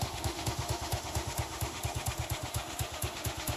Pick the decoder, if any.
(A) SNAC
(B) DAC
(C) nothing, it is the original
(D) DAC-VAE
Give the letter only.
D